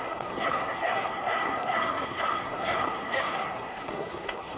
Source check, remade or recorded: remade